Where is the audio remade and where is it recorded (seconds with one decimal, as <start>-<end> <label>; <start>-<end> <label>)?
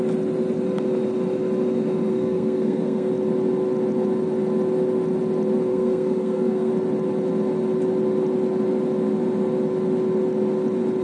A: 0.0-2.1 recorded; 2.1-3.1 remade; 3.1-5.7 recorded; 5.7-6.7 remade; 6.7-11.0 recorded